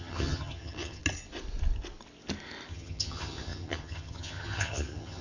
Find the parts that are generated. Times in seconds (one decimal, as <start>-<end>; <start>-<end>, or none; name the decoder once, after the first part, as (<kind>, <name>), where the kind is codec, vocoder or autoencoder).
0.0-1.0 (vocoder, HiFi-GAN); 2.7-5.2